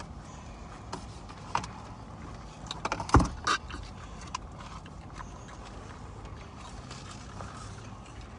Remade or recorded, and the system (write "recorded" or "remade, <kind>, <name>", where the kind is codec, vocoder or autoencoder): recorded